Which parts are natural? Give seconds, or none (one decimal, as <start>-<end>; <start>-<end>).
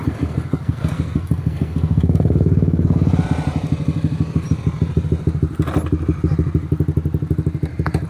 3.1-8.1